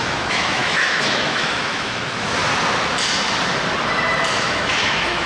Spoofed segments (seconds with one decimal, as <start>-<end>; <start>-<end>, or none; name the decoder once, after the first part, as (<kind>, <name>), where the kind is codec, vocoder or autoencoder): 0.0-2.4 (autoencoder, DAC-VAE); 4.3-5.3